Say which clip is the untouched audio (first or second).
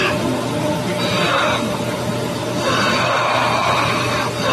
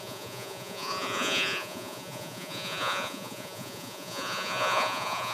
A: first